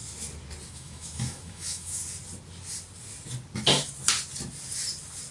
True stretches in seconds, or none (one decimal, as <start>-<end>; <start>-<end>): 0.0-0.7; 2.0-5.3